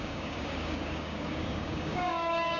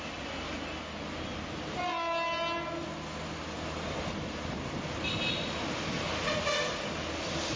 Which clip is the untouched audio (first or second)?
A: second